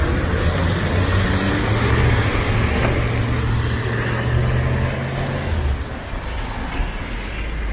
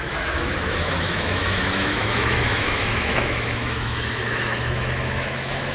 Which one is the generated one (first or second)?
second